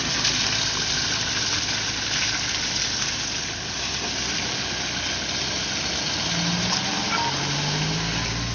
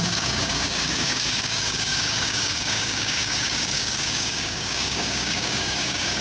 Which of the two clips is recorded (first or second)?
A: first